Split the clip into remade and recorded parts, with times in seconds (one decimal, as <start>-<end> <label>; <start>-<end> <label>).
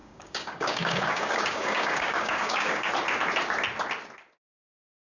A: 0.0-2.9 remade; 2.9-5.1 recorded